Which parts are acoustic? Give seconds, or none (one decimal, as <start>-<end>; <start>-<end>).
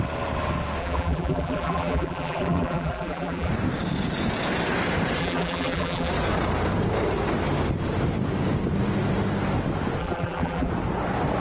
0.0-0.8; 3.5-5.2; 6.1-10.0; 10.7-11.4